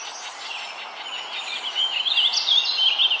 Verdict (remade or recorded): recorded